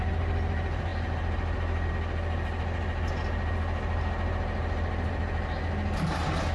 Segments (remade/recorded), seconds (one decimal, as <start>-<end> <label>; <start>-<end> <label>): 0.0-6.5 recorded